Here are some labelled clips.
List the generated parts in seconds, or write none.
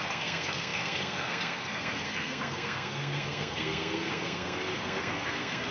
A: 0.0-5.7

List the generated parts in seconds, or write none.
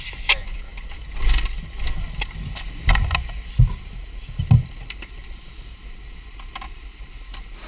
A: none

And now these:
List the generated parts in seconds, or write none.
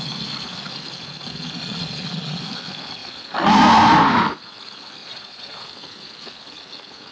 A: 1.6-2.4; 5.0-5.6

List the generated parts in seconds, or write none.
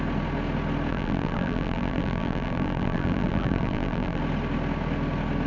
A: 0.9-4.2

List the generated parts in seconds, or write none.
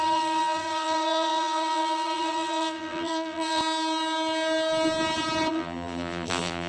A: 0.0-3.6; 5.5-6.7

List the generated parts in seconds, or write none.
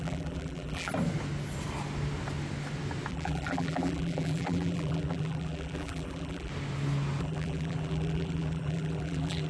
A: 0.0-0.9; 3.1-6.5; 7.2-9.5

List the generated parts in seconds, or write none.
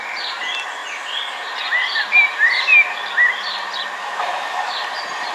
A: 4.0-4.7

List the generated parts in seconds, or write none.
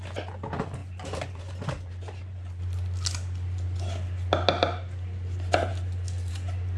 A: none